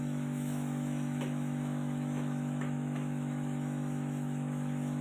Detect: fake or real fake